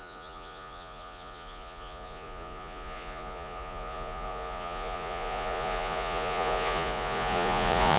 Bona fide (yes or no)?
no